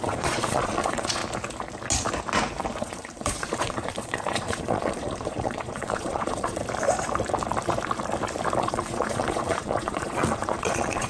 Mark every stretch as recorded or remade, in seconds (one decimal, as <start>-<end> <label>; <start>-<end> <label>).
0.0-1.2 remade; 1.2-2.8 recorded; 2.8-6.6 remade; 6.6-8.6 recorded; 8.6-11.1 remade

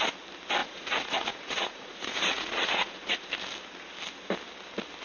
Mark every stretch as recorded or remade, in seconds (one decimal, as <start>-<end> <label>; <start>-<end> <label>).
0.0-0.6 recorded; 0.6-3.3 remade; 3.3-5.0 recorded

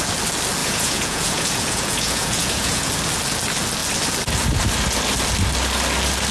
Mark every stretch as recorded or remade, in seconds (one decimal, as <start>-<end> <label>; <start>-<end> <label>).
0.0-0.6 recorded; 0.6-2.9 remade; 2.9-6.3 recorded

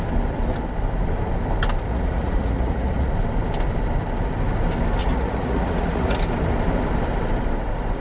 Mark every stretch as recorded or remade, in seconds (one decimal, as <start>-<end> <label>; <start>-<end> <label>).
0.0-1.9 recorded; 1.9-3.1 remade; 3.1-5.0 recorded; 5.0-6.2 remade; 6.2-8.0 recorded

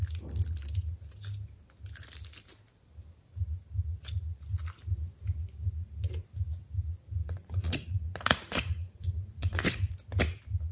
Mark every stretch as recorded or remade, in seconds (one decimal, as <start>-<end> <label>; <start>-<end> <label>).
0.0-7.2 recorded; 7.2-9.9 remade; 9.9-10.7 recorded

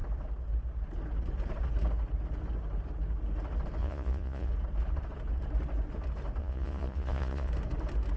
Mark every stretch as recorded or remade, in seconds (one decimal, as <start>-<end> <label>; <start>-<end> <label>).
0.0-3.8 recorded; 3.8-4.5 remade; 4.5-6.4 recorded; 6.4-7.5 remade; 7.5-8.2 recorded

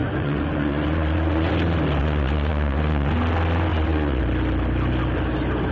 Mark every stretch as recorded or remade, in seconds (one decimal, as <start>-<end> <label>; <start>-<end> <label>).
0.0-1.5 remade; 1.5-2.0 recorded; 2.0-3.1 remade; 3.1-3.7 recorded; 3.7-4.2 remade; 4.2-5.7 recorded

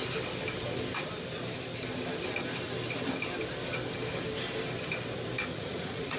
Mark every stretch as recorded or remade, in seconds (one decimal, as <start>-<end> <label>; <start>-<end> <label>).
0.0-5.5 recorded; 5.5-6.2 remade